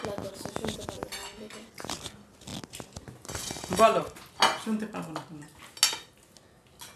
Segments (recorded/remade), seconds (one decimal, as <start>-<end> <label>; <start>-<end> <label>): 0.0-7.0 recorded